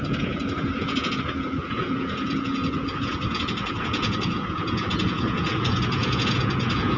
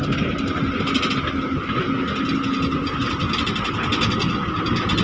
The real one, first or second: second